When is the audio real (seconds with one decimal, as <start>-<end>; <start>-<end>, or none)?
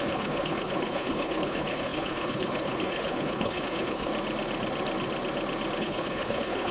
4.1-5.8